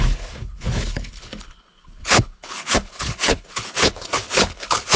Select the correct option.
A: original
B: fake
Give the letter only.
B